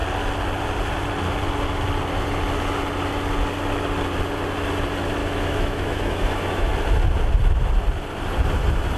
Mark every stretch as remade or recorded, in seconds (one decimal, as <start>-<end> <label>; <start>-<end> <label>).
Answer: 0.0-5.2 recorded; 5.2-6.7 remade; 6.7-9.0 recorded